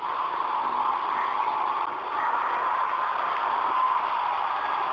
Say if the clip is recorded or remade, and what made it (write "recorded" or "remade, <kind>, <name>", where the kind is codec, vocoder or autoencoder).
recorded